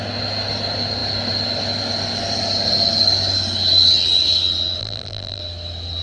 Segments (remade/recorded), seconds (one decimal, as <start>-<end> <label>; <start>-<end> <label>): 0.0-4.8 recorded; 4.8-5.4 remade; 5.4-6.0 recorded